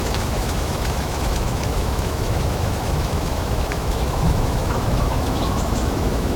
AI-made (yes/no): yes